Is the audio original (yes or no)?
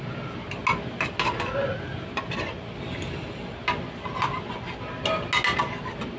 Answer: yes